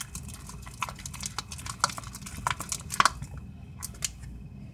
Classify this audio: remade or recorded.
recorded